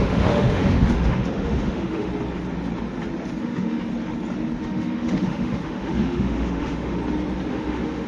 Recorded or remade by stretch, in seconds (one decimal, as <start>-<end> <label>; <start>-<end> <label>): 0.0-2.1 remade; 2.1-3.4 recorded; 3.4-3.9 remade; 3.9-4.6 recorded; 4.6-7.0 remade; 7.0-7.5 recorded; 7.5-8.1 remade